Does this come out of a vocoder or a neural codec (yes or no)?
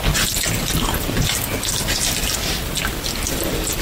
no